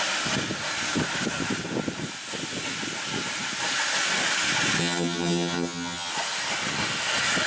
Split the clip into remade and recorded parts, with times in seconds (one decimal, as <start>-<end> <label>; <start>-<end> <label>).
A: 0.0-4.8 recorded; 4.8-6.1 remade; 6.1-7.5 recorded